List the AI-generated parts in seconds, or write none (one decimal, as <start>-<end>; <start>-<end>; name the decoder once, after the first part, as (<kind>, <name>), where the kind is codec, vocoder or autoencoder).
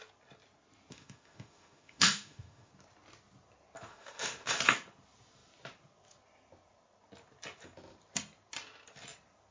0.9-2.7 (autoencoder, DAC-VAE); 3.9-4.6